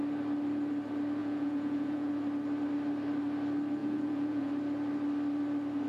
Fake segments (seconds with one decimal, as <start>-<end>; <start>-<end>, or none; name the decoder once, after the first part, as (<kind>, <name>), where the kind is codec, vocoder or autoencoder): 1.2-2.1 (vocoder, Vocos); 3.8-4.5